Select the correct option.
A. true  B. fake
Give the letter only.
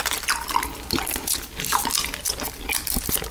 A